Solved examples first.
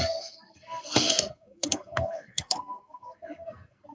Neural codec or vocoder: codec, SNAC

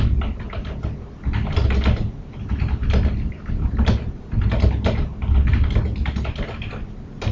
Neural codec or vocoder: none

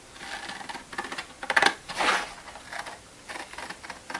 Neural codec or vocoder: none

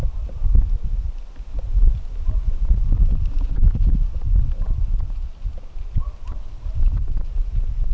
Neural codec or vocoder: none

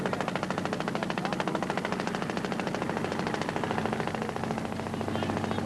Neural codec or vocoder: none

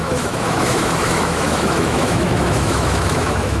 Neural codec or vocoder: autoencoder, DAC-VAE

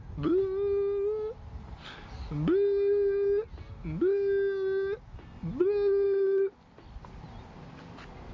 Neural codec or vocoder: none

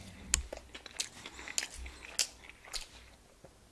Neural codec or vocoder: none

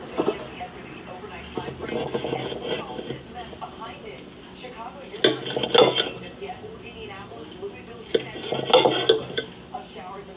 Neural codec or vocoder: none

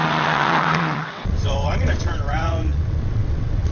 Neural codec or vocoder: vocoder, WaveNeXt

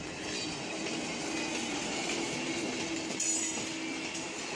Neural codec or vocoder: none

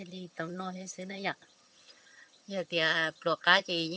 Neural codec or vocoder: vocoder, HiFi-GAN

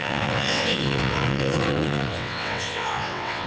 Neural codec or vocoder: vocoder, WaveNeXt